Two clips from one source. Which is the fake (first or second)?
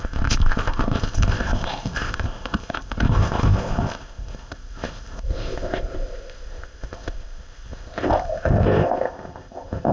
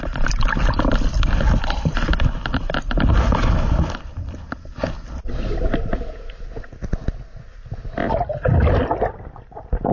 first